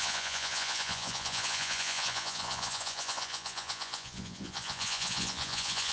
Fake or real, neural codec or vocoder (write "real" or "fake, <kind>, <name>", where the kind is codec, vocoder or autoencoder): fake, vocoder, Vocos